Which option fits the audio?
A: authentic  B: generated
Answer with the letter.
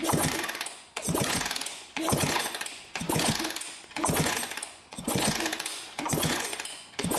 B